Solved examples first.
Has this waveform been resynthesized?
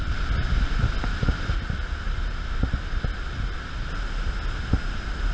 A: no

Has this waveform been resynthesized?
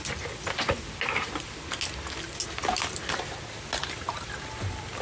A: no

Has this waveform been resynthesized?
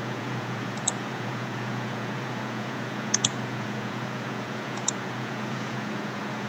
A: yes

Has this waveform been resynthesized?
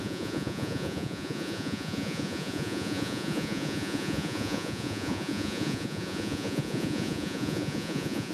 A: yes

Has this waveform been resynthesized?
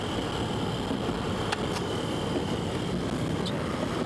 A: no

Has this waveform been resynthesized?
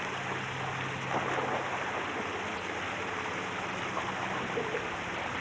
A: no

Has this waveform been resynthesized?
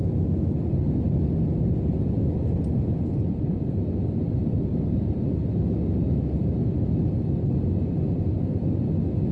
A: no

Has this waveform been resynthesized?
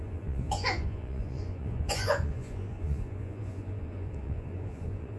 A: yes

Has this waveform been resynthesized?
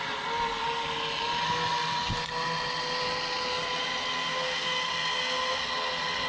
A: no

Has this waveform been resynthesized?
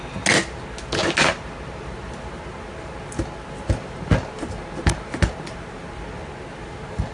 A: no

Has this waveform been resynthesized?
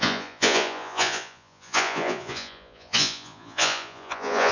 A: yes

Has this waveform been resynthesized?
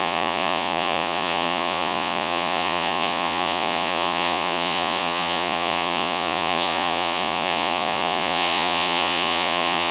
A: yes